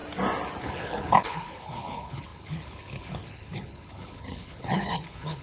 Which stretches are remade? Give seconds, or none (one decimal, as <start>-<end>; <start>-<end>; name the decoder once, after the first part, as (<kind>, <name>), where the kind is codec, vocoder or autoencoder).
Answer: 0.6-5.4 (codec, HILCodec)